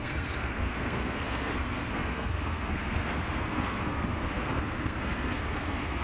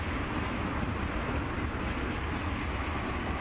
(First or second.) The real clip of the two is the second